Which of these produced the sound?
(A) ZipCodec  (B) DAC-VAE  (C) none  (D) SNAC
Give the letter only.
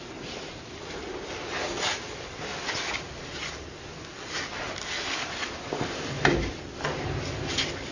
C